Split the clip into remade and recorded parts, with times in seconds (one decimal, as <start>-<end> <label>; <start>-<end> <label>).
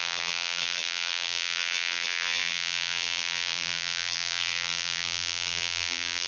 0.0-6.3 remade